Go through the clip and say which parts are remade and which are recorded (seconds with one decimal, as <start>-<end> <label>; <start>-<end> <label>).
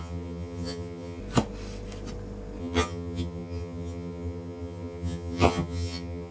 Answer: 0.0-1.2 remade; 1.2-2.6 recorded; 2.6-6.3 remade